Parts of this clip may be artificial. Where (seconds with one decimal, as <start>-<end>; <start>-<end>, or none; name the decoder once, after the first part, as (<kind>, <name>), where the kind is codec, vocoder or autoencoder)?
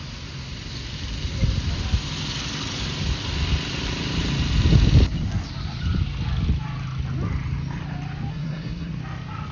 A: 8.3-8.9 (codec, SNAC)